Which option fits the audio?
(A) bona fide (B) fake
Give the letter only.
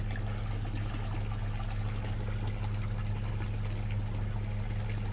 A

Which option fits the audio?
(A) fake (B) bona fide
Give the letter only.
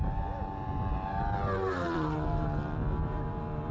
A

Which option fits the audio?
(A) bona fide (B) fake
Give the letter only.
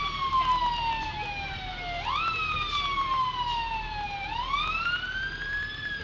A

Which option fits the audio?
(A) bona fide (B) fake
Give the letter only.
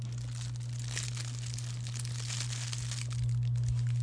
A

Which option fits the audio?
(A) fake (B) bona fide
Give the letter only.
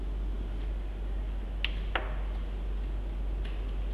B